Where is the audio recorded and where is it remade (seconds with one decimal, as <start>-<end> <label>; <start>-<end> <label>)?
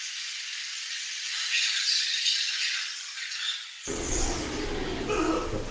0.0-0.7 recorded; 0.7-4.1 remade; 4.1-5.7 recorded